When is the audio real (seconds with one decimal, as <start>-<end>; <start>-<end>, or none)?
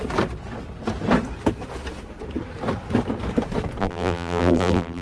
0.0-3.8